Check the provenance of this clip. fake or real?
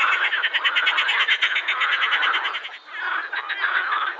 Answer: real